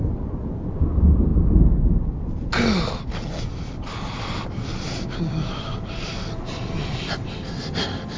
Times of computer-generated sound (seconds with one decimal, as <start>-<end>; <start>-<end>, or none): none